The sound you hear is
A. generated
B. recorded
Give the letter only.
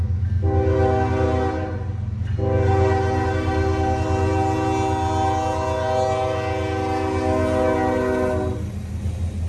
B